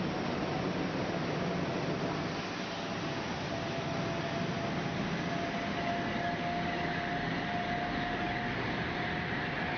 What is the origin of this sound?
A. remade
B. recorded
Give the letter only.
B